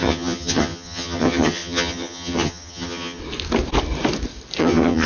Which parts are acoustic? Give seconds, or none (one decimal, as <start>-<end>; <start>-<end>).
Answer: 3.2-4.6